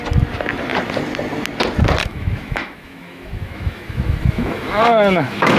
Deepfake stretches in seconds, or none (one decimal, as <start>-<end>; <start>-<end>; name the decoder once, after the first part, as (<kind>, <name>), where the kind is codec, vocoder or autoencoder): 2.0-5.6 (autoencoder, DAC-VAE)